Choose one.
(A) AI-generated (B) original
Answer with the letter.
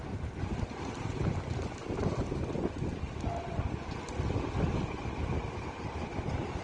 B